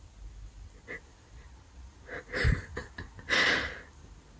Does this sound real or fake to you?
real